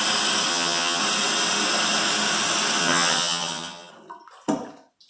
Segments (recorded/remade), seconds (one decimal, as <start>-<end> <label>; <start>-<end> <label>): 0.0-0.5 recorded; 0.5-1.0 remade; 1.0-2.8 recorded; 2.8-3.9 remade; 3.9-5.1 recorded